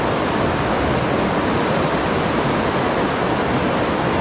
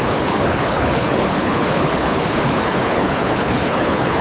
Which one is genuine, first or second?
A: first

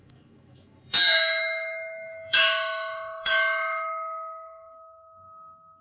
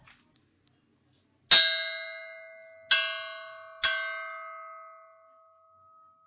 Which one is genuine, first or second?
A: second